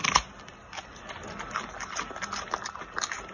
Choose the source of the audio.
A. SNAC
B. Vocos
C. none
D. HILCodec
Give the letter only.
C